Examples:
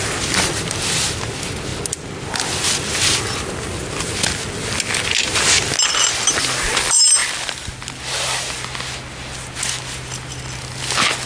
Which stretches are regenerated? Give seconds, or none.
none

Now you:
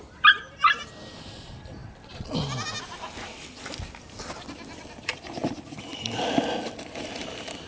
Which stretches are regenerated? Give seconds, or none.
5.4-7.7 (vocoder, BigVGAN v2)

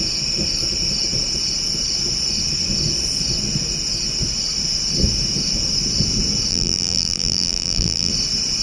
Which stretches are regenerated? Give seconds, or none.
6.5-8.1 (vocoder, BigVGAN v2)

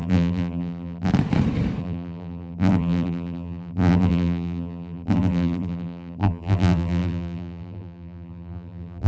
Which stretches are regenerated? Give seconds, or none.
0.0-1.1 (vocoder, BigVGAN v2); 1.8-9.1

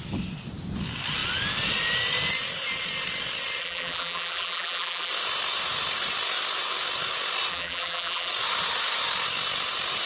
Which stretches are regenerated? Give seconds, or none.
3.6-5.1 (vocoder, BigVGAN v2); 7.5-8.3

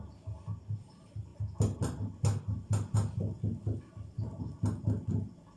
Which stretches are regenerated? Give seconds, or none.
none